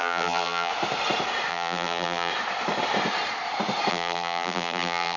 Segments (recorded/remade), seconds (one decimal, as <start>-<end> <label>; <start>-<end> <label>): 0.0-0.7 remade; 0.7-1.5 recorded; 1.5-2.3 remade; 2.3-3.9 recorded; 3.9-5.2 remade